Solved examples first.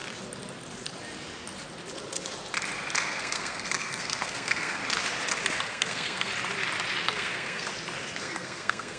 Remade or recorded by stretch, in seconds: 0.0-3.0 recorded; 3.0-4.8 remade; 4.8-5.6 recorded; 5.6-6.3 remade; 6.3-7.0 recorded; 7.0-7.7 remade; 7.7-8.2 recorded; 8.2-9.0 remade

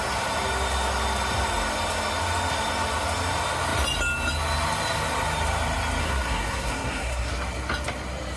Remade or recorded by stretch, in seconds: 0.0-6.0 recorded; 6.0-7.3 remade; 7.3-8.4 recorded

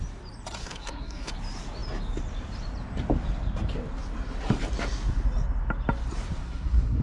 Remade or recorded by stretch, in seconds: 0.0-0.6 recorded; 0.6-1.3 remade; 1.3-6.4 recorded; 6.4-7.0 remade

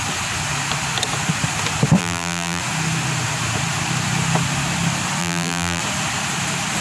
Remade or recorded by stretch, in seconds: 0.0-2.0 recorded; 2.0-2.6 remade; 2.6-5.2 recorded; 5.2-5.8 remade; 5.8-6.8 recorded

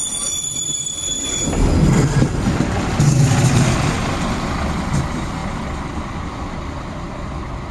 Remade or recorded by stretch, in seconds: 0.0-5.4 recorded; 5.4-7.7 remade